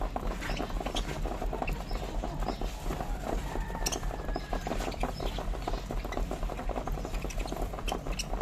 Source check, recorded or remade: recorded